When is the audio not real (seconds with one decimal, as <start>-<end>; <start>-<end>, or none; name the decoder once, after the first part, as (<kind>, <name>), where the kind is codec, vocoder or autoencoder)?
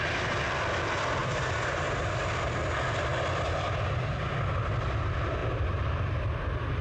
1.2-1.9 (vocoder, BigVGAN v2); 5.4-6.1